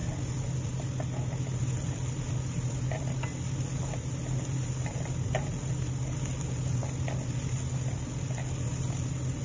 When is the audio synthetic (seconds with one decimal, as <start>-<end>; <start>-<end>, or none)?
none